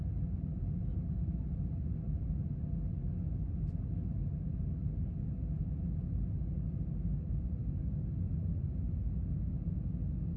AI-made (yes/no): no